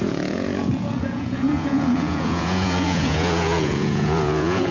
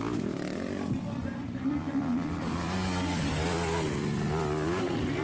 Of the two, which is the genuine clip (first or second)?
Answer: second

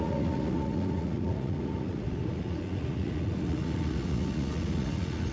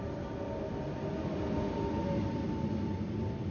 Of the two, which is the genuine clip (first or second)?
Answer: second